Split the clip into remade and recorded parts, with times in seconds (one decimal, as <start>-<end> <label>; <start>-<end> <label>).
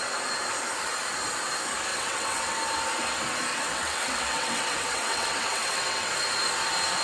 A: 0.0-1.9 recorded; 1.9-2.6 remade; 2.6-3.5 recorded; 3.5-6.1 remade; 6.1-7.0 recorded